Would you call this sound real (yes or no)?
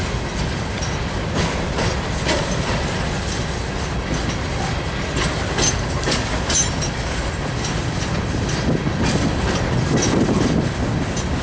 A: yes